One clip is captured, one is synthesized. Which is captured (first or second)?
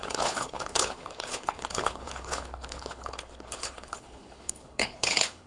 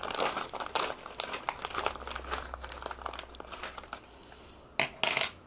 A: second